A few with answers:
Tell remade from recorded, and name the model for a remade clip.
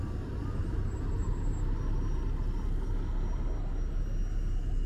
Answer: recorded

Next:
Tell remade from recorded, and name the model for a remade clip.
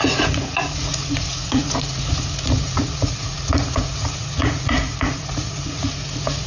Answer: remade, vocoder, Vocos